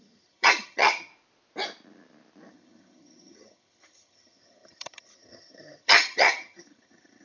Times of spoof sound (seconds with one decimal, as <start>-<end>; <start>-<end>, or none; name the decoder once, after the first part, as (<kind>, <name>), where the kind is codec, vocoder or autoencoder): 0.0-1.1 (vocoder, HiFi-GAN); 2.5-7.2